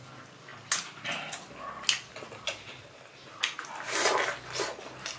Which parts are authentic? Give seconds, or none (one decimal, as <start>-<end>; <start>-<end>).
0.0-5.2